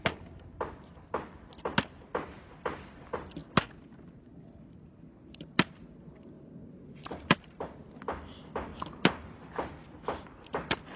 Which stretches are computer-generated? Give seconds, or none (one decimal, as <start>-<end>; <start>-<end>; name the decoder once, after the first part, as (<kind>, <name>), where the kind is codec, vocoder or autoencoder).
none